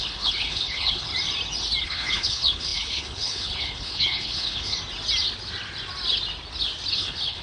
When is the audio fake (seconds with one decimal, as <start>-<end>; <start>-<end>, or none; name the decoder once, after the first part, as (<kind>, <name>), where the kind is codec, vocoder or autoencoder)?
0.0-1.1 (codec, HILCodec); 1.8-4.8; 6.9-7.4